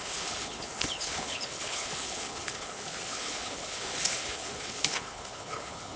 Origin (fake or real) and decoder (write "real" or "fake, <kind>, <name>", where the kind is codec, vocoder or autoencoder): fake, codec, HILCodec